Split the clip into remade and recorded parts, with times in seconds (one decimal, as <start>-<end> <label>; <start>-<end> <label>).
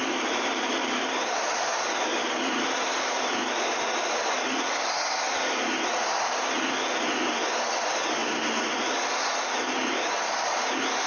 0.0-1.1 remade; 1.1-2.1 recorded; 2.1-3.4 remade; 3.4-11.1 recorded